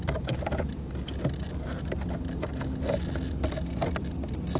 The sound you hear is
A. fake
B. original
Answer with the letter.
B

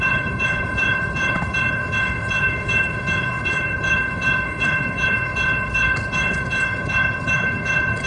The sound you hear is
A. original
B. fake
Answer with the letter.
B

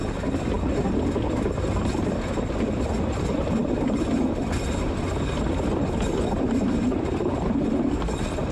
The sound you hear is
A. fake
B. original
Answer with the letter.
B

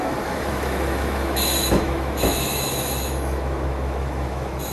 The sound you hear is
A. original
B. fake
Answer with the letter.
B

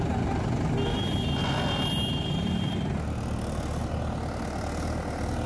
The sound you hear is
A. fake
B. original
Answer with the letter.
B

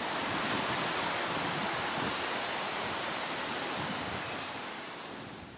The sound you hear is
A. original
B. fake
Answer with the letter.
A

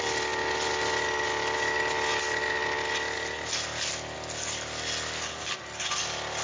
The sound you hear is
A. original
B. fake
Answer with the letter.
A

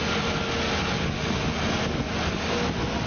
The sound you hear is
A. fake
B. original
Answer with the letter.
B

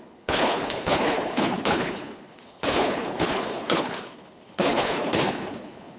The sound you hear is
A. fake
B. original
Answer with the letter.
A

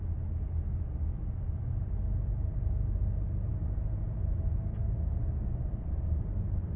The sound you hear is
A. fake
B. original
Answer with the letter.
B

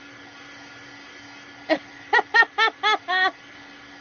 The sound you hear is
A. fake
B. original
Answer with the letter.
B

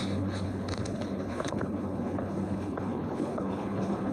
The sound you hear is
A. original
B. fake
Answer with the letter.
B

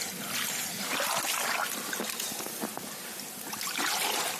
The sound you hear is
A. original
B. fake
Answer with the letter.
A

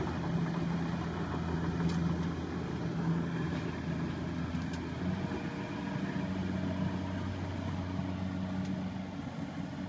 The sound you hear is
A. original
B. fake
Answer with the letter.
A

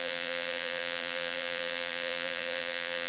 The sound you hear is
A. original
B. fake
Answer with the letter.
B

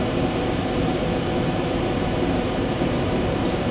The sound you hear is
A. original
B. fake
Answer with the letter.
B